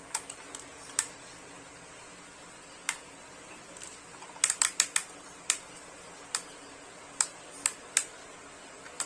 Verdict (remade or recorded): recorded